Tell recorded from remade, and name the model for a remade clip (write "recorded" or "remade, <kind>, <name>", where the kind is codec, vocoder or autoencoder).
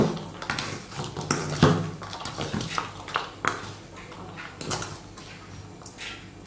recorded